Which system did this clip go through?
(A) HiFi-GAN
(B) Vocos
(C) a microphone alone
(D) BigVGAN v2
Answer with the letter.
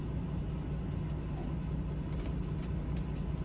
C